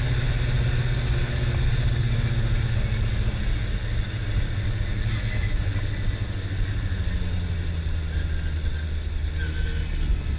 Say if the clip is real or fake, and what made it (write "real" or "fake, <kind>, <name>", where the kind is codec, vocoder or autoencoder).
real